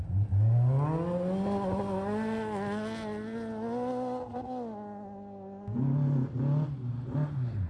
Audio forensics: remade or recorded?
recorded